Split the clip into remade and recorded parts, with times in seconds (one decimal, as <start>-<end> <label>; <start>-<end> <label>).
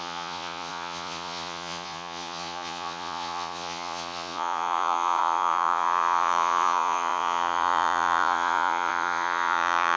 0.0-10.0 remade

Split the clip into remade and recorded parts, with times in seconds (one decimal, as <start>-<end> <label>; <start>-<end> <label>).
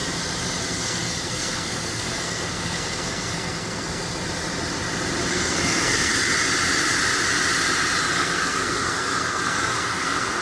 0.0-0.6 recorded; 0.6-4.0 remade; 4.0-5.3 recorded; 5.3-6.1 remade; 6.1-8.1 recorded; 8.1-10.4 remade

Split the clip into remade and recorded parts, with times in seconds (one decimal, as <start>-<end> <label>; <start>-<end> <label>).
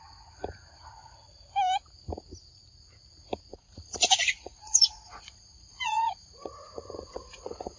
0.0-3.5 recorded; 3.5-7.8 remade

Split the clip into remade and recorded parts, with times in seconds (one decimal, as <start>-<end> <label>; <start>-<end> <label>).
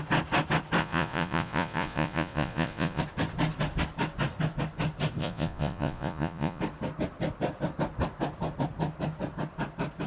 0.0-0.8 recorded; 0.8-3.0 remade; 3.0-5.2 recorded; 5.2-6.6 remade; 6.6-10.1 recorded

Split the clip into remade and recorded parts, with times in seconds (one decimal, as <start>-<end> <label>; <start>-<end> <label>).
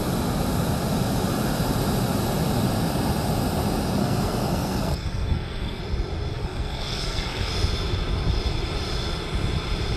0.0-4.0 recorded; 4.0-5.8 remade; 5.8-6.3 recorded; 6.3-7.5 remade; 7.5-10.0 recorded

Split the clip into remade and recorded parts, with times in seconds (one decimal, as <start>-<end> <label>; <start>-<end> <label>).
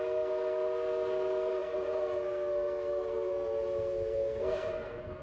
0.0-5.2 remade